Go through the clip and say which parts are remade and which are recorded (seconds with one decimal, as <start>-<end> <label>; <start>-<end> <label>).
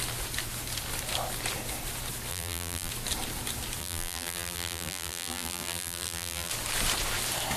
0.0-2.3 recorded; 2.3-2.9 remade; 2.9-3.8 recorded; 3.8-6.5 remade; 6.5-7.6 recorded